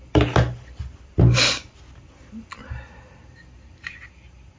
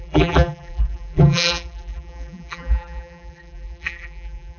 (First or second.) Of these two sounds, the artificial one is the second